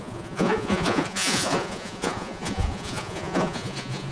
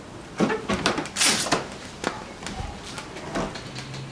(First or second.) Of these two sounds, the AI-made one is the first